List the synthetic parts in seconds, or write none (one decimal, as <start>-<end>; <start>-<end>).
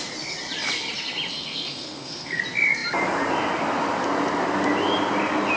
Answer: 1.3-2.4